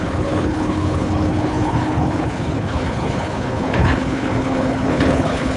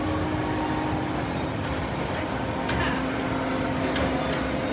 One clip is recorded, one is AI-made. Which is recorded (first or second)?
second